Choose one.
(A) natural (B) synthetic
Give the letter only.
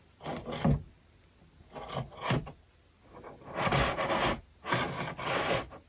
A